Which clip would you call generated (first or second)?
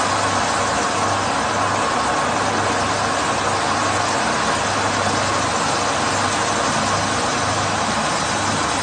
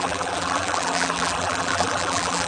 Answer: second